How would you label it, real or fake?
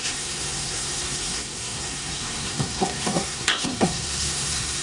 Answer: fake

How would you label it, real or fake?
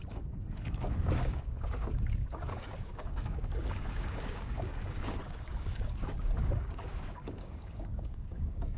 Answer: fake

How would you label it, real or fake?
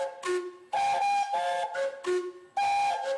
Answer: real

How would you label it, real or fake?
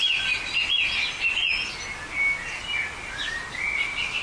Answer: real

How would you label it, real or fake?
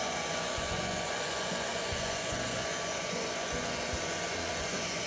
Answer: fake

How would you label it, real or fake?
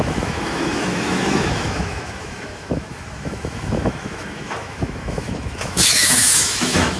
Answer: fake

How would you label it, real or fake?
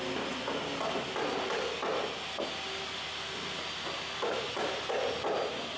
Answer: real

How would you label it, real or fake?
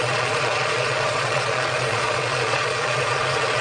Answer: fake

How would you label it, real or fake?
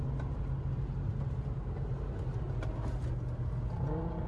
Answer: real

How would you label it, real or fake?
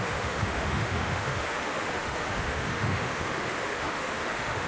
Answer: fake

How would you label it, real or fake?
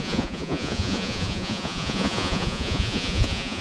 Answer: fake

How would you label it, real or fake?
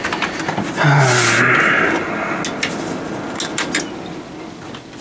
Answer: real